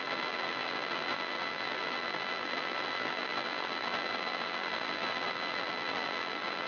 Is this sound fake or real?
fake